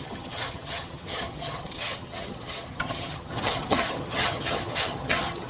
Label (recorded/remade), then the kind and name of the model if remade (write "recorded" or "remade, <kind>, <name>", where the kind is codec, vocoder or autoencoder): remade, vocoder, HiFi-GAN